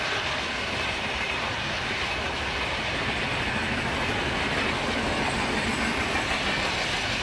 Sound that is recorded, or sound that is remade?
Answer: recorded